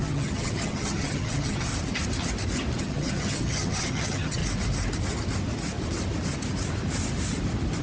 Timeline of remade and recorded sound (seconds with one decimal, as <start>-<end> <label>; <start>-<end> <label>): 0.0-1.7 remade; 1.7-2.8 recorded; 2.8-4.4 remade; 4.4-7.8 recorded

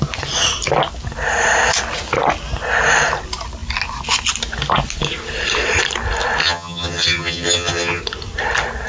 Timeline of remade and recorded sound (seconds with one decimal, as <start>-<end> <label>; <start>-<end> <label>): 0.0-6.4 recorded; 6.4-8.0 remade; 8.0-8.9 recorded

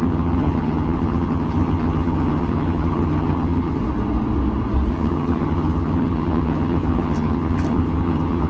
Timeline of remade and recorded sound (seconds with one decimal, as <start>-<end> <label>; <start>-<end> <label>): 0.0-3.8 remade; 3.8-4.9 recorded; 4.9-8.5 remade

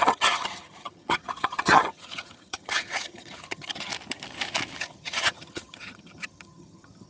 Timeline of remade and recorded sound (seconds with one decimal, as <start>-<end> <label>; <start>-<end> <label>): 0.0-3.9 remade; 3.9-4.8 recorded; 4.8-7.1 remade

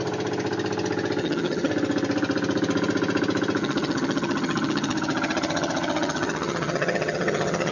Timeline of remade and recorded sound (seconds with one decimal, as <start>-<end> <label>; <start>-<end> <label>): 0.0-1.2 recorded; 1.2-1.7 remade; 1.7-3.6 recorded; 3.6-7.7 remade

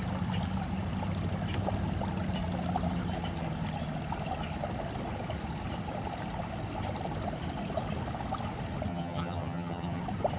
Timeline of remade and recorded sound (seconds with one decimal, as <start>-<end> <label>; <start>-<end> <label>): 0.0-8.9 recorded; 8.9-10.0 remade; 10.0-10.4 recorded